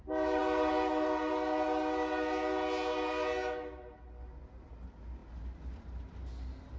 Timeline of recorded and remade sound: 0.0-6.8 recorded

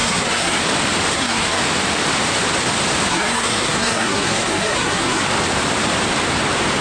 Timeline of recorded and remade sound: 0.0-0.6 remade; 0.6-1.1 recorded; 1.1-1.6 remade; 1.6-3.1 recorded; 3.1-5.2 remade; 5.2-6.8 recorded

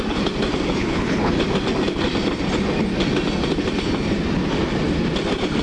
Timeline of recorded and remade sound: 0.0-0.8 recorded; 0.8-1.3 remade; 1.3-5.6 recorded

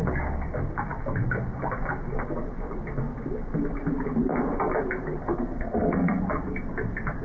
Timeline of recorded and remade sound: 0.0-5.2 recorded; 5.2-6.2 remade; 6.2-7.2 recorded

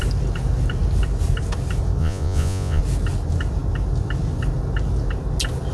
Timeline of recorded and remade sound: 0.0-2.0 recorded; 2.0-2.8 remade; 2.8-5.7 recorded

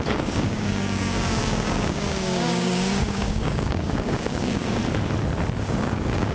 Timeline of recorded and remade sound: 0.0-4.8 remade; 4.8-5.6 recorded; 5.6-6.3 remade

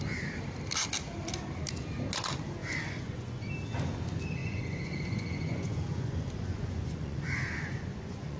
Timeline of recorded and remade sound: 0.0-2.6 recorded; 2.6-3.5 remade; 3.5-4.4 recorded; 4.4-8.4 remade

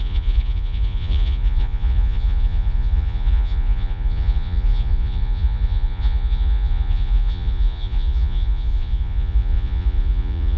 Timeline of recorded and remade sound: 0.0-10.6 remade